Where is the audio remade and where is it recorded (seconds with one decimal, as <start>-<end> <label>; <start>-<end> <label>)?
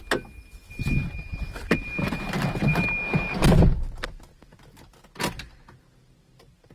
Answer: 0.0-6.7 recorded